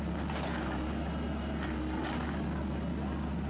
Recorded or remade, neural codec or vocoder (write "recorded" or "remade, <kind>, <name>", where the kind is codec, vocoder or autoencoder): recorded